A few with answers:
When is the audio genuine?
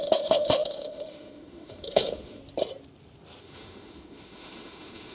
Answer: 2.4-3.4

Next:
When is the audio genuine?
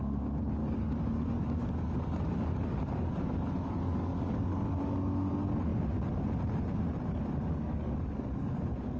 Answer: 0.0-0.6; 5.3-7.5